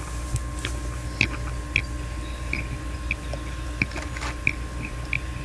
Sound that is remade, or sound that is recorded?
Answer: recorded